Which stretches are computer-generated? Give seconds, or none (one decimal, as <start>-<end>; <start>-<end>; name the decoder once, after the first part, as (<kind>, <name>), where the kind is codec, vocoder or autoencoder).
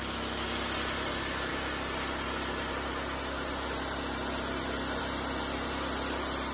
none